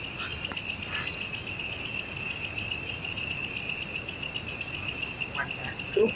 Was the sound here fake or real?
real